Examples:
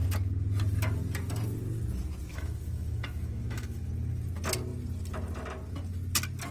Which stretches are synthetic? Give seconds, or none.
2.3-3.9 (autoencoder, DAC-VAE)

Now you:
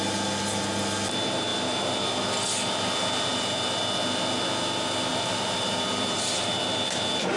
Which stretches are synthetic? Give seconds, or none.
3.3-3.8 (vocoder, BigVGAN v2); 5.1-7.4

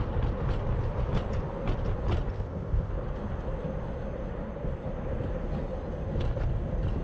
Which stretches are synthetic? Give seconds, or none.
2.3-2.9 (codec, ZipCodec)

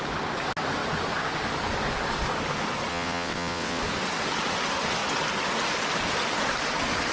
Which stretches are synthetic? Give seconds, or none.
2.9-3.8 (vocoder, WaveNeXt)